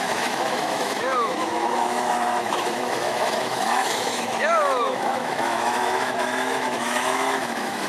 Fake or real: fake